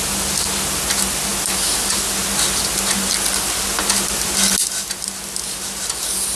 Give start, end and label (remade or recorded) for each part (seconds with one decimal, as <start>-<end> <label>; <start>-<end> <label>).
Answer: 0.0-6.4 recorded

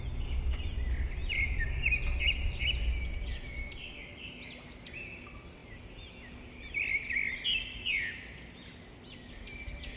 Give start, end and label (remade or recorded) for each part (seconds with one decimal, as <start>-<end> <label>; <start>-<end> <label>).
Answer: 0.0-10.0 recorded

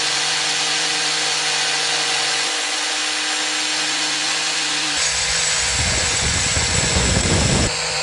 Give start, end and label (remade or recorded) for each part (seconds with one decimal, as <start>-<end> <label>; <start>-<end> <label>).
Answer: 0.0-3.0 remade; 3.0-3.8 recorded; 3.8-8.0 remade

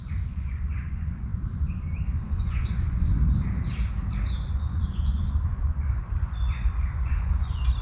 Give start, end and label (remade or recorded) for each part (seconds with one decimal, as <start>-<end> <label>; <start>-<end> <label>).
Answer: 0.0-3.1 remade; 3.1-4.5 recorded; 4.5-7.8 remade